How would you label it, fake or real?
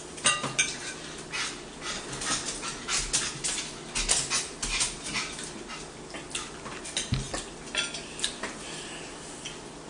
real